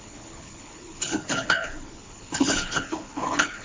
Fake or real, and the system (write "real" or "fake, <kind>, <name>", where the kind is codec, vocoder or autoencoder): fake, codec, HILCodec